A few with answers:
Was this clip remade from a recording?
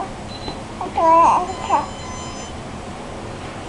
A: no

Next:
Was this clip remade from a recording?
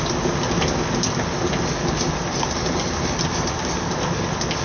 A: no